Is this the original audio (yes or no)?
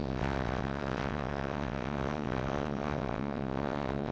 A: no